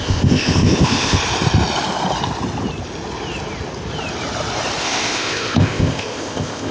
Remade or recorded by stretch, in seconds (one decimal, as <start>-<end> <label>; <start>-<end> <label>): 0.0-1.2 remade; 1.2-4.8 recorded; 4.8-6.7 remade